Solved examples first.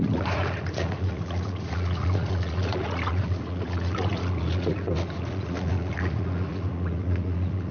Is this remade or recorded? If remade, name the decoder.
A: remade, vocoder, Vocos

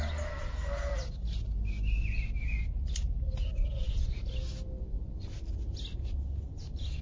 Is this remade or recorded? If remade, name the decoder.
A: recorded